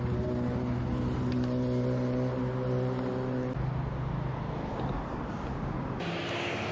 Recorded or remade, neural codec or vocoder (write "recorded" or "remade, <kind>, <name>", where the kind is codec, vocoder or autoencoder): recorded